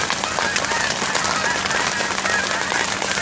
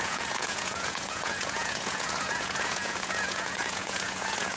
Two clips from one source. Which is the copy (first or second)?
second